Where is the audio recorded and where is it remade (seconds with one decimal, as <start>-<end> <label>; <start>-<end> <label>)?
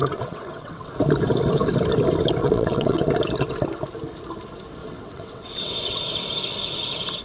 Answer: 0.0-0.9 remade; 0.9-2.4 recorded; 2.4-3.0 remade; 3.0-4.8 recorded; 4.8-5.9 remade; 5.9-7.2 recorded